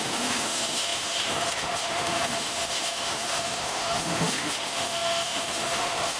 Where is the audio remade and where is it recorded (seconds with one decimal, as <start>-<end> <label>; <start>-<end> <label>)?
0.0-6.2 remade